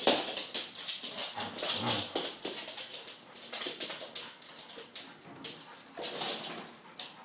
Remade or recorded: recorded